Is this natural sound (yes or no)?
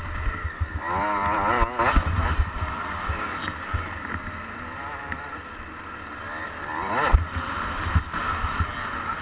yes